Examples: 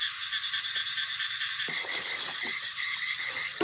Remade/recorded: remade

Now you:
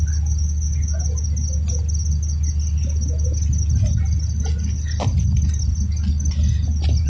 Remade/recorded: recorded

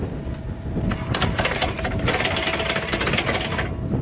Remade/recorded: recorded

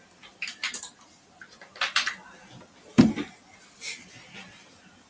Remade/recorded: recorded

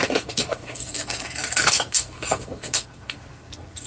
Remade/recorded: remade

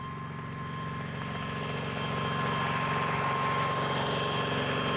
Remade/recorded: recorded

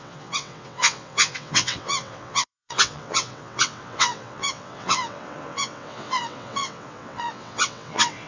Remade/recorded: remade